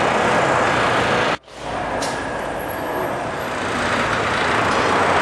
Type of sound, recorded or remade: recorded